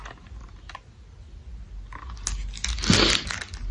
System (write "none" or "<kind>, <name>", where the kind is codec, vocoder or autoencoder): none